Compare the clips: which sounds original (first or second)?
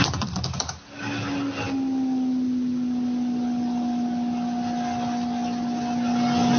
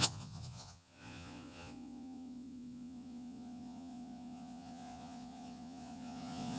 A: first